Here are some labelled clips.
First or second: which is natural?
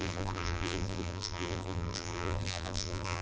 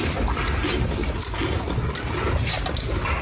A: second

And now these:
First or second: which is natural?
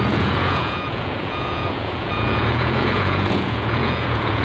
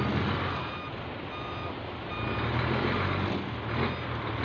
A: second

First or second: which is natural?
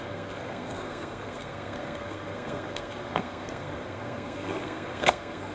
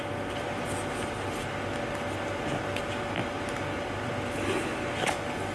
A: second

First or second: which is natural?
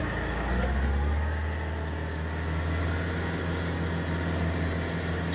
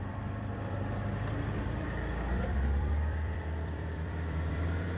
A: first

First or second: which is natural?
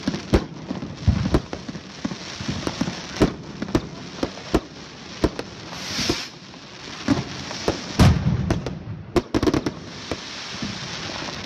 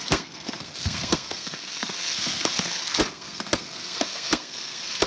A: first